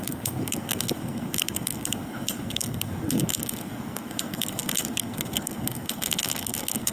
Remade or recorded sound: remade